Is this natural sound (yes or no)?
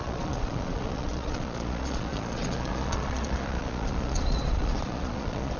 no